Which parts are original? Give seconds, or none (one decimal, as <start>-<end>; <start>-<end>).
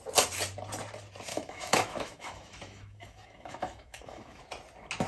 0.0-1.3; 4.4-5.1